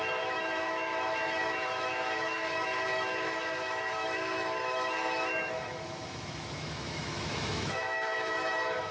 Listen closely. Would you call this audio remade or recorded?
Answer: remade